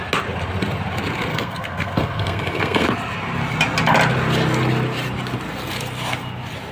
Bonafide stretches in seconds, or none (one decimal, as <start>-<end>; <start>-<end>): 0.0-1.3; 2.9-6.7